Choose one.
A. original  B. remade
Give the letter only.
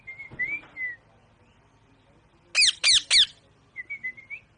A